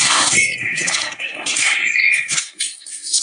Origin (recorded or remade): remade